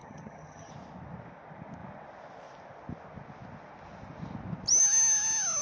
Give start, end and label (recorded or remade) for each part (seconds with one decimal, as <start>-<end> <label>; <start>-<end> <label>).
0.0-0.7 remade; 0.7-5.6 recorded